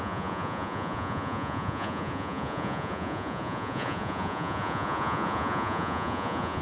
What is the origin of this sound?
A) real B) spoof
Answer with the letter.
B